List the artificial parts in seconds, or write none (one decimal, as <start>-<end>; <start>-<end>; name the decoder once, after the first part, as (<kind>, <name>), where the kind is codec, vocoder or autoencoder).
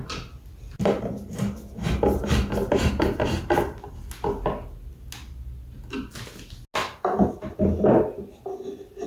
2.6-3.9 (vocoder, BigVGAN v2); 6.8-7.5